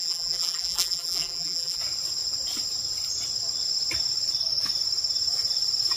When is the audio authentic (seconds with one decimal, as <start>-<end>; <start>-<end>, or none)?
1.8-6.0